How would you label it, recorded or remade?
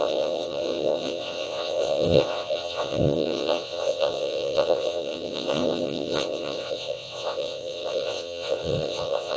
remade